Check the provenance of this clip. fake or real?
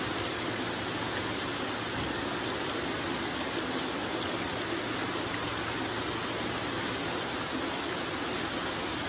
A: real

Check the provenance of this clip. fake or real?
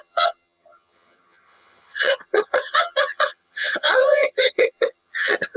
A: fake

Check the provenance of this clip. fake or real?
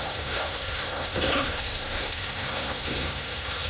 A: fake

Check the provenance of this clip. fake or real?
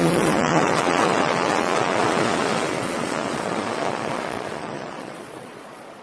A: fake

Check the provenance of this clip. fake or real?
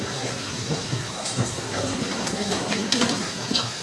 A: fake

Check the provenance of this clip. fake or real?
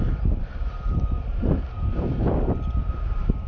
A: real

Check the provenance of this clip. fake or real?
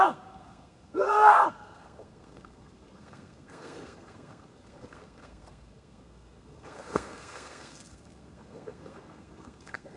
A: fake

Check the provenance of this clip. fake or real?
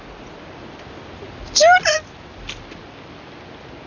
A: real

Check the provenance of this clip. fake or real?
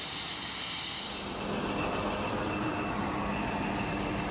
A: real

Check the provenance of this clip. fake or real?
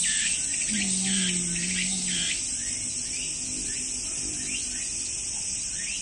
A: real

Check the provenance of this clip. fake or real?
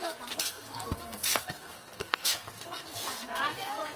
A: fake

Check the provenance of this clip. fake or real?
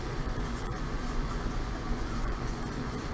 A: fake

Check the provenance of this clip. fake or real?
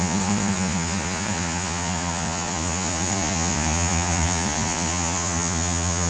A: fake